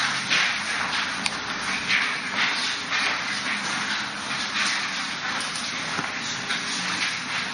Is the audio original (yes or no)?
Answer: yes